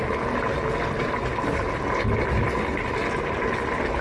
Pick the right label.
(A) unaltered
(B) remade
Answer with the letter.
A